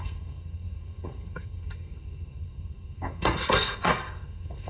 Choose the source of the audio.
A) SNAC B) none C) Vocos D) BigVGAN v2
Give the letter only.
A